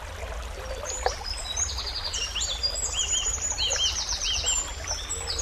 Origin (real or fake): real